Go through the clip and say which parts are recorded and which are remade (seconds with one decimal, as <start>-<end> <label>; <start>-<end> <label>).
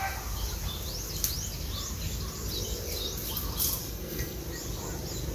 0.0-3.8 recorded; 3.8-4.4 remade; 4.4-5.3 recorded